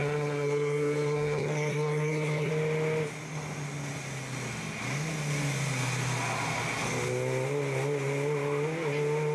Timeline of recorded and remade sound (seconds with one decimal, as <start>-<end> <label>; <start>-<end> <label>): 0.0-2.5 remade; 2.5-9.3 recorded